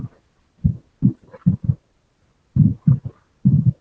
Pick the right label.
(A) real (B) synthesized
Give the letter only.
A